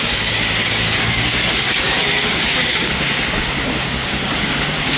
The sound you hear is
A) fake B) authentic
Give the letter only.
A